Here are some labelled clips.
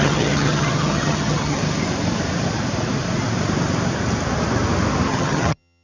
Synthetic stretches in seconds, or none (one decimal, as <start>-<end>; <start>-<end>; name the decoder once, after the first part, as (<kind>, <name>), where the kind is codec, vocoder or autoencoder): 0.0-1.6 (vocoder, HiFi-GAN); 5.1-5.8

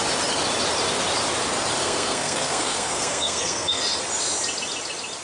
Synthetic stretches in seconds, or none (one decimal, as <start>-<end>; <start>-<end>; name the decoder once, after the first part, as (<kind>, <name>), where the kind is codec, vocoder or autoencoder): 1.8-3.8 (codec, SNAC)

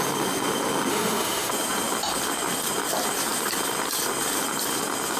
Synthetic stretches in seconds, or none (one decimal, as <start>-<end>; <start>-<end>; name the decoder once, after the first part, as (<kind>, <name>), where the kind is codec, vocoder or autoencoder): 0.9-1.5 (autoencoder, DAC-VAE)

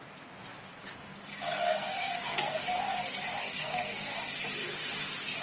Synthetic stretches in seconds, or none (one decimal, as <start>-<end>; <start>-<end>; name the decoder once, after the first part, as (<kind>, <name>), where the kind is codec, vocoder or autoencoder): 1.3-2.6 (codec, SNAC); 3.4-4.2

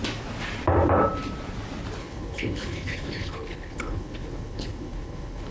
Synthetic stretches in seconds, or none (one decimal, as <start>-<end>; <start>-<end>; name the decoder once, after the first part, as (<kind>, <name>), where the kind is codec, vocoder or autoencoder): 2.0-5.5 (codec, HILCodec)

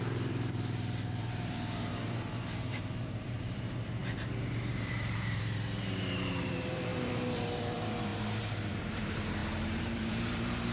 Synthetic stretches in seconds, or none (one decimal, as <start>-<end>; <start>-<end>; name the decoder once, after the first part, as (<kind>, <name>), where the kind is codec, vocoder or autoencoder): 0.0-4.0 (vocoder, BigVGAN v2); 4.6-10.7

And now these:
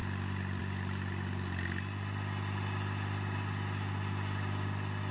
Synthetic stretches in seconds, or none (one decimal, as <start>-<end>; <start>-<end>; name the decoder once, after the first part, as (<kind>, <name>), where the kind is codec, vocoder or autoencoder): none

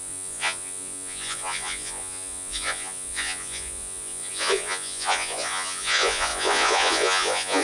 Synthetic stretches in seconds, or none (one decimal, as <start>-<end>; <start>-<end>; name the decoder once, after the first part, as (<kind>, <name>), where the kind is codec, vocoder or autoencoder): 0.0-7.6 (vocoder, Vocos)